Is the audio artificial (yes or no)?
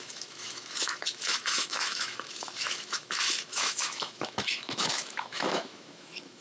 yes